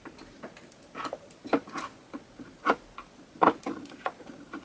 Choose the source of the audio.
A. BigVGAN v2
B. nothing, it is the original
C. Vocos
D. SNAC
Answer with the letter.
B